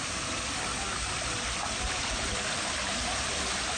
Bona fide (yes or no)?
no